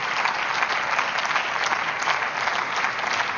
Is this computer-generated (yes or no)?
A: no